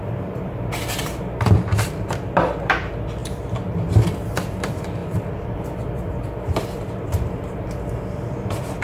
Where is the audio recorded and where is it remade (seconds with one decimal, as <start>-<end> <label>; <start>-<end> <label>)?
0.0-8.8 remade